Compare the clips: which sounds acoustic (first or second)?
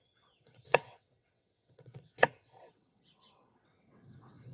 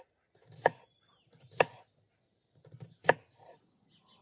second